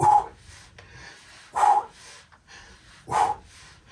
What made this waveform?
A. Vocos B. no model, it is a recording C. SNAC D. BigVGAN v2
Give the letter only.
B